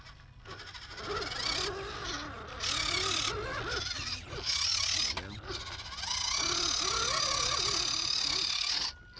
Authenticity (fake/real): real